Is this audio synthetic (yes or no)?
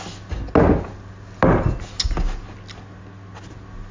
no